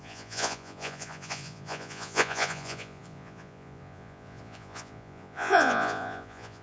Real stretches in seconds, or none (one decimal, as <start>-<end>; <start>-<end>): none